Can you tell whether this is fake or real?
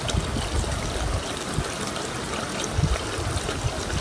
real